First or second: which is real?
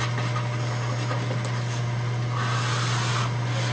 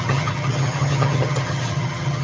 first